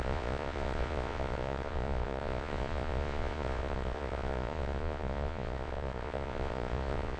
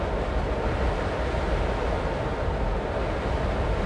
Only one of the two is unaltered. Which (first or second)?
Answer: second